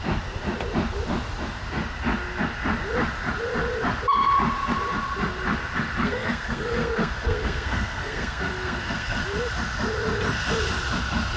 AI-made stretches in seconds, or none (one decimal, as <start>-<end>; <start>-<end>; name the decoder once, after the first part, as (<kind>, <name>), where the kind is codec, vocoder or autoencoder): 6.0-9.2 (codec, SNAC)